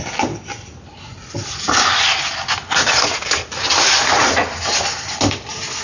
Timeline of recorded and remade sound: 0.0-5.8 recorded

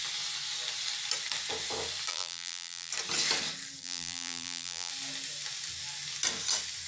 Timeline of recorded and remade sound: 0.0-2.1 recorded; 2.1-2.9 remade; 2.9-3.8 recorded; 3.8-4.9 remade; 4.9-6.9 recorded

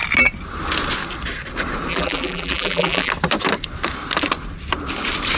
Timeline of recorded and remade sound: 0.0-1.9 recorded; 1.9-3.1 remade; 3.1-5.4 recorded

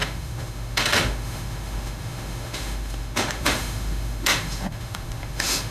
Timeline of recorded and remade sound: 0.0-5.7 remade

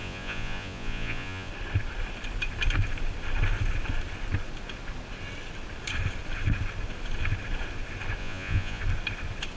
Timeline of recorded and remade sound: 0.0-1.5 remade; 1.5-8.2 recorded; 8.2-8.8 remade; 8.8-9.6 recorded

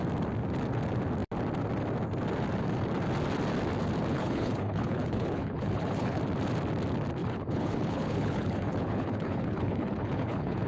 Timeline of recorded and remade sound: 0.0-4.1 recorded; 4.1-6.2 remade; 6.2-7.2 recorded; 7.2-10.7 remade

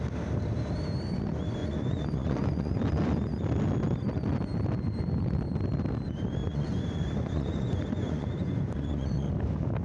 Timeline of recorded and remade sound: 0.0-1.6 recorded; 1.6-2.8 remade; 2.8-6.4 recorded; 6.4-9.3 remade; 9.3-9.8 recorded

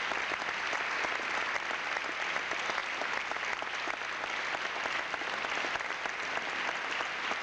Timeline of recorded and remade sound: 0.0-7.4 recorded